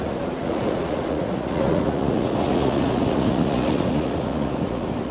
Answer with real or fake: fake